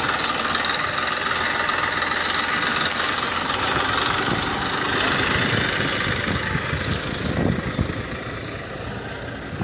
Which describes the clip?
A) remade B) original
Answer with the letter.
B